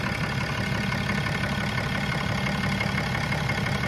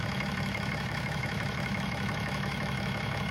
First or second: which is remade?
second